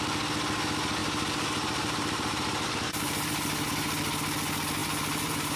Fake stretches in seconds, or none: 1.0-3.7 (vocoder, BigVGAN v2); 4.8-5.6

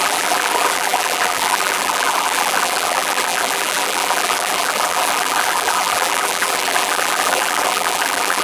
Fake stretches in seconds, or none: 0.0-8.4 (vocoder, BigVGAN v2)

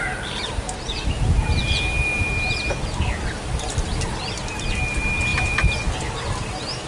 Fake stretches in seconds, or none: 5.3-5.8 (vocoder, BigVGAN v2)